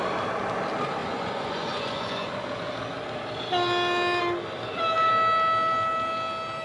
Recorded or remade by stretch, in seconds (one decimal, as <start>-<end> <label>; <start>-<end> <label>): 0.0-1.0 recorded; 1.0-2.3 remade; 2.3-6.6 recorded